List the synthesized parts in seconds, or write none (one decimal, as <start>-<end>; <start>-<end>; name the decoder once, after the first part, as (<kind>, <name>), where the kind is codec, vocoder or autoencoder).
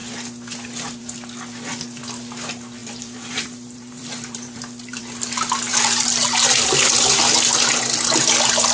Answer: 2.8-5.0 (vocoder, BigVGAN v2); 5.7-7.2